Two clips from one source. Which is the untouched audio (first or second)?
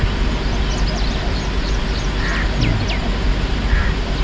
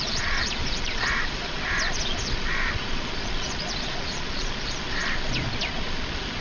first